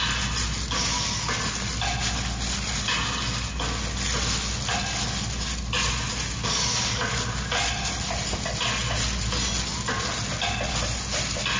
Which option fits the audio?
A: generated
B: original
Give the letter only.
B